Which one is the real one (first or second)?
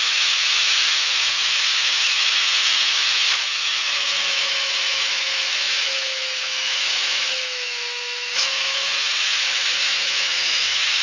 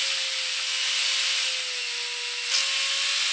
second